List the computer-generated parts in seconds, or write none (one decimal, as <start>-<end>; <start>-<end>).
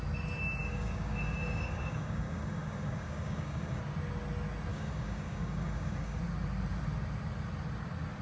0.6-3.8; 4.7-6.2